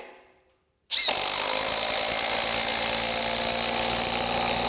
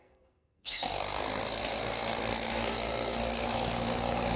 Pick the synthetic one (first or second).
second